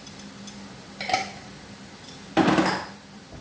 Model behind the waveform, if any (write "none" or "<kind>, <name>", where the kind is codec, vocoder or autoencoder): none